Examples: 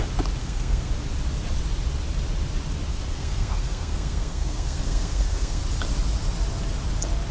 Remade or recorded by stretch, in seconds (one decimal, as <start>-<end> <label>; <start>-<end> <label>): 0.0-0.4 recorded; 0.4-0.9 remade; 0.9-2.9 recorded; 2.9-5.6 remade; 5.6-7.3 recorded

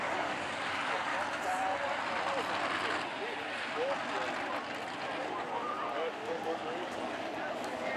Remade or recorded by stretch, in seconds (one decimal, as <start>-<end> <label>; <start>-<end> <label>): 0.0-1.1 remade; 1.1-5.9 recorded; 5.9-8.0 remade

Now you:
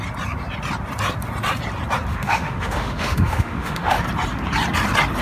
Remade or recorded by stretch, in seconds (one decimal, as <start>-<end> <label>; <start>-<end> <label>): 0.0-2.1 recorded; 2.1-4.0 remade; 4.0-5.2 recorded